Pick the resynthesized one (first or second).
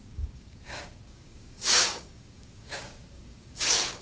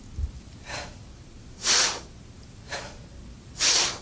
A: first